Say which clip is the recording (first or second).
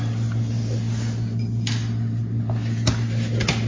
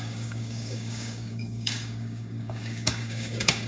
first